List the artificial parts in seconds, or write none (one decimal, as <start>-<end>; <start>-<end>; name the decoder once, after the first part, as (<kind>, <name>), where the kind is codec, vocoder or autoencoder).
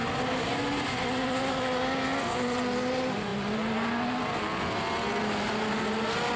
none